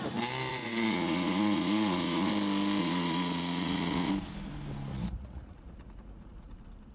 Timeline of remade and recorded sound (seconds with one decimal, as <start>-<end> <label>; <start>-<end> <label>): 0.0-0.5 recorded; 0.5-2.3 remade; 2.3-2.8 recorded; 2.8-4.1 remade; 4.1-4.9 recorded; 4.9-6.5 remade; 6.5-6.9 recorded